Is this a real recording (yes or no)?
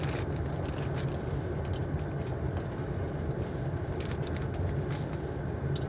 yes